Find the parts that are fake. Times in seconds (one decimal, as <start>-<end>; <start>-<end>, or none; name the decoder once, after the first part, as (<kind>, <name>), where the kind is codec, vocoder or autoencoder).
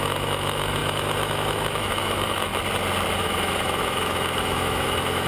0.0-2.5 (autoencoder, DAC-VAE); 3.2-5.3